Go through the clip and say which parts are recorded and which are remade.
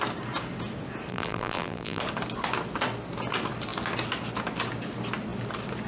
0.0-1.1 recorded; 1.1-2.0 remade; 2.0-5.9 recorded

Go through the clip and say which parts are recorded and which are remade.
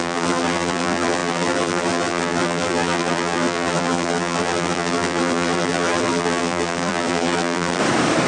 0.0-7.8 remade; 7.8-8.3 recorded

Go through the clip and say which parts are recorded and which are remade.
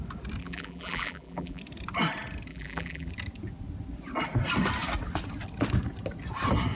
0.0-0.4 recorded; 0.4-1.6 remade; 1.6-2.5 recorded; 2.5-3.1 remade; 3.1-6.7 recorded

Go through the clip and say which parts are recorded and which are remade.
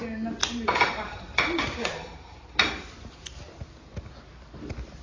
0.0-0.4 recorded; 0.4-3.4 remade; 3.4-5.0 recorded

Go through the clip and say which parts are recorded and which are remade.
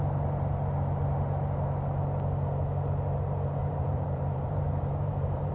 0.0-3.6 recorded; 3.6-5.5 remade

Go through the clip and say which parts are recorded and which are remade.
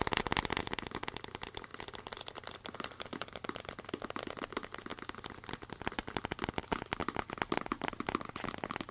0.0-1.7 recorded; 1.7-4.4 remade; 4.4-4.9 recorded; 4.9-6.5 remade; 6.5-7.5 recorded; 7.5-8.0 remade; 8.0-8.9 recorded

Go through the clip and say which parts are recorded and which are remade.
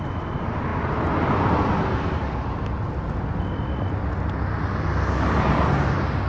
0.0-6.3 recorded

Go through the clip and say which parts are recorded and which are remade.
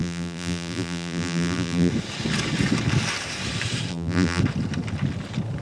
0.0-1.9 remade; 1.9-3.9 recorded; 3.9-4.4 remade; 4.4-5.6 recorded